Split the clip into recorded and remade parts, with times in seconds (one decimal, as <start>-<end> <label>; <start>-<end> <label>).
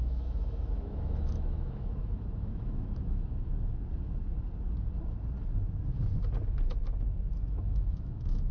0.0-3.5 remade; 3.5-7.5 recorded; 7.5-8.5 remade